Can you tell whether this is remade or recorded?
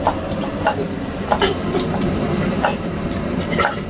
remade